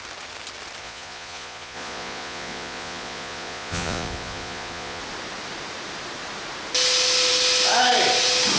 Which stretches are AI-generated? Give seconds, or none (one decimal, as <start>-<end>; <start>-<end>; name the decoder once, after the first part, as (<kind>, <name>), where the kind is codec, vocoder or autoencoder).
0.8-5.0 (vocoder, Vocos)